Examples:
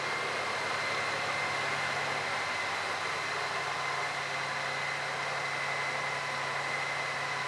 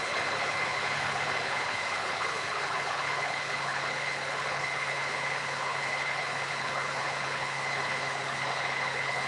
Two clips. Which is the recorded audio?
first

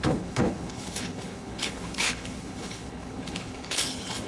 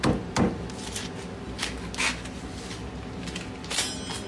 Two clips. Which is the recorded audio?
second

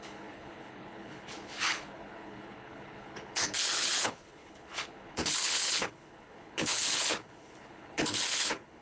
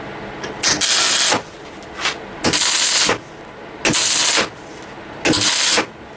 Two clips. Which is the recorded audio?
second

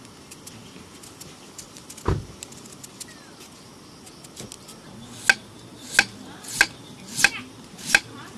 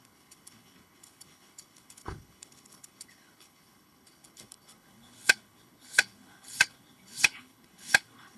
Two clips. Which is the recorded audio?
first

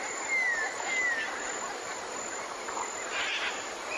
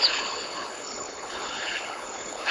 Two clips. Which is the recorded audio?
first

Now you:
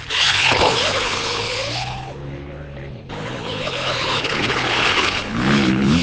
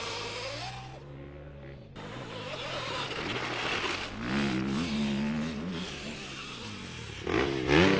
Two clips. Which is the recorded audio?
second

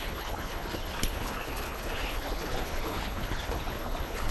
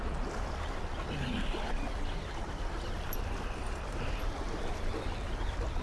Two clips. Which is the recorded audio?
second